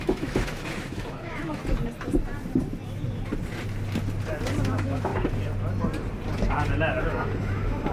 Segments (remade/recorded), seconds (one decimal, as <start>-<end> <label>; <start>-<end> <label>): 0.0-1.6 remade; 1.6-4.6 recorded; 4.6-5.1 remade; 5.1-7.0 recorded; 7.0-7.9 remade